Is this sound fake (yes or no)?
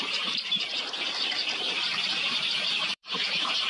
yes